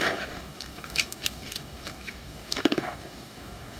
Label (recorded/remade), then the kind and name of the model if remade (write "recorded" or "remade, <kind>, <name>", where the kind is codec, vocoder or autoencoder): remade, codec, DAC